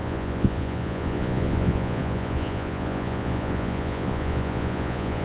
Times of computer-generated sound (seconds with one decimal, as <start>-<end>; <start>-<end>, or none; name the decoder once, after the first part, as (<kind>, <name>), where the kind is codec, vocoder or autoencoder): 0.0-5.2 (vocoder, Vocos)